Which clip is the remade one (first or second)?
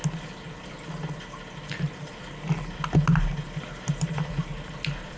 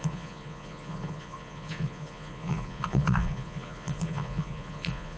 second